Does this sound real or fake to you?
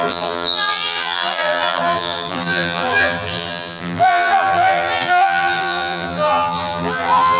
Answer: fake